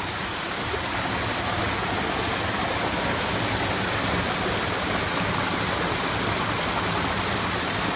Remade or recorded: recorded